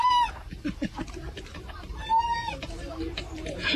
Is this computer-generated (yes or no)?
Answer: yes